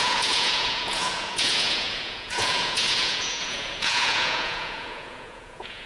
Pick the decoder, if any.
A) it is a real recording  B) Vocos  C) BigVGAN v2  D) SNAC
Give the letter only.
B